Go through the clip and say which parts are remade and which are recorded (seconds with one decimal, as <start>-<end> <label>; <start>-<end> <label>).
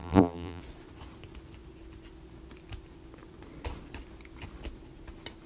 0.0-0.6 remade; 0.6-5.5 recorded